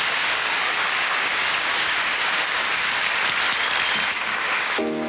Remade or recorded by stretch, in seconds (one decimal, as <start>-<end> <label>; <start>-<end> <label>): 0.0-3.0 remade; 3.0-4.1 recorded; 4.1-5.1 remade